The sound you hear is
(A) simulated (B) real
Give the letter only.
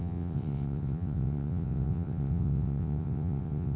A